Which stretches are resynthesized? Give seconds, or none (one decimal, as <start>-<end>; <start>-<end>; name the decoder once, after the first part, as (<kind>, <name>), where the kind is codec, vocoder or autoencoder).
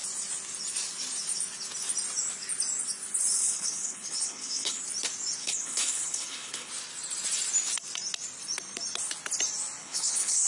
3.4-4.8 (codec, HILCodec); 5.4-6.7; 9.8-10.5